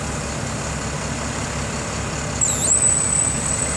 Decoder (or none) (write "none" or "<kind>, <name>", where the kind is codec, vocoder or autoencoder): none